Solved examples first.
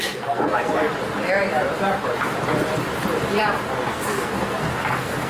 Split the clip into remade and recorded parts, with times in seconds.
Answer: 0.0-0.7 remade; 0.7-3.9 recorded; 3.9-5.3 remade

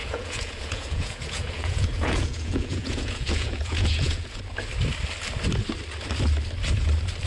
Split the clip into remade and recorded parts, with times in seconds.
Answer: 0.0-4.4 remade; 4.4-7.3 recorded

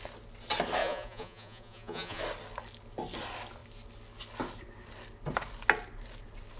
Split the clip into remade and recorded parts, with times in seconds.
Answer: 0.0-0.8 recorded; 0.8-2.2 remade; 2.2-6.6 recorded